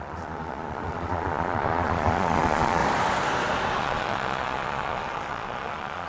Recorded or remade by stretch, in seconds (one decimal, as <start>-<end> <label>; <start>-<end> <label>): 0.0-2.8 remade; 2.8-3.8 recorded; 3.8-6.1 remade